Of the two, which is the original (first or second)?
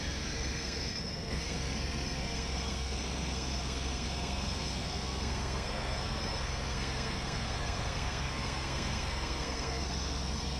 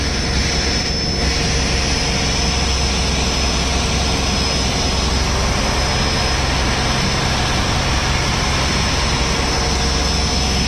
second